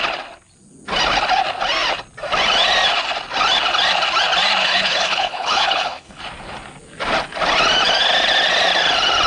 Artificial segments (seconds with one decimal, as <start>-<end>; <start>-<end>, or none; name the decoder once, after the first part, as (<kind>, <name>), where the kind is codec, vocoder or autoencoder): 4.6-6.2 (codec, HILCodec)